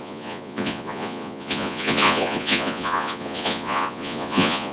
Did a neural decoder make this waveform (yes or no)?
yes